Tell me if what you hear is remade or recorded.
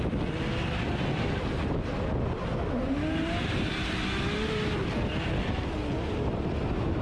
recorded